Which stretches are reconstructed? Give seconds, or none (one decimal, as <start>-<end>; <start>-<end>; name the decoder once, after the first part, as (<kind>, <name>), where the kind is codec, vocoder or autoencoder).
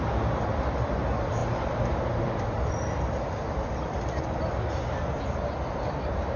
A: 1.4-5.2 (vocoder, BigVGAN v2)